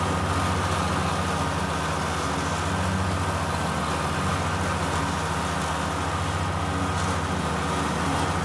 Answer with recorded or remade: recorded